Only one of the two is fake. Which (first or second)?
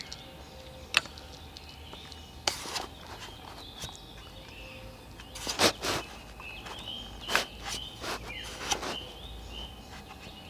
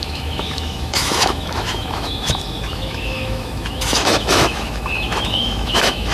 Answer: second